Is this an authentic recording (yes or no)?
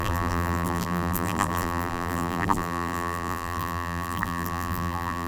no